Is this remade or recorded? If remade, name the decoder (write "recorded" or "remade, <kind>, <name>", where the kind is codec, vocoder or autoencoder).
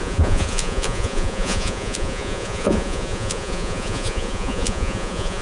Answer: remade, vocoder, Vocos